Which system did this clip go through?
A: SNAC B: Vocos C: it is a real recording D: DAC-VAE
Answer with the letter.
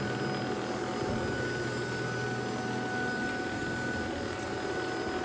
C